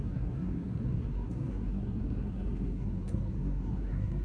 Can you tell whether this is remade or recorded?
remade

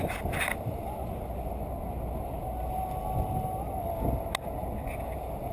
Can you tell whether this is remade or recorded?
recorded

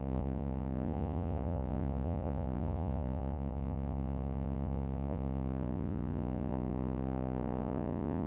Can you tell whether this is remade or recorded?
remade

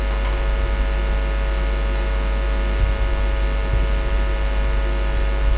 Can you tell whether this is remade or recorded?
recorded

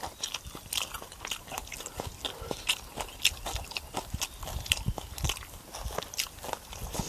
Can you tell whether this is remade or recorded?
recorded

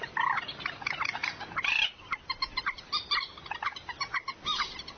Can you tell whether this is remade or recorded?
recorded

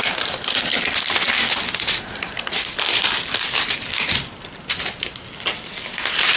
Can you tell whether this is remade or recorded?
recorded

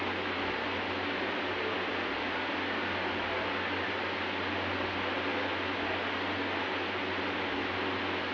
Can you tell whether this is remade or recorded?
recorded